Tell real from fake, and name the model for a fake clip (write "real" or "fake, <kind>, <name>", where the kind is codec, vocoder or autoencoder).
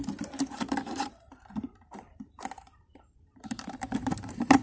fake, vocoder, BigVGAN v2